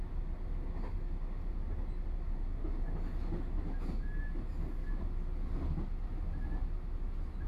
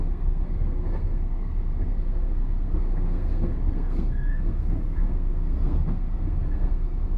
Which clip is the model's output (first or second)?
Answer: second